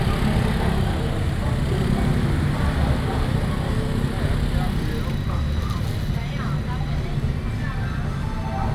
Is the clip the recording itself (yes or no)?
yes